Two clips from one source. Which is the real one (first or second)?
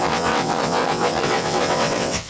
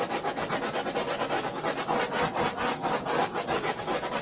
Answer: second